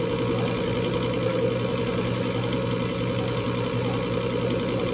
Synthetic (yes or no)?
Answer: no